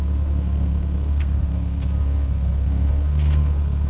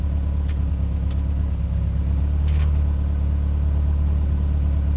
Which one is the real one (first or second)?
second